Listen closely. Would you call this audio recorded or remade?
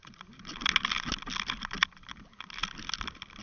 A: recorded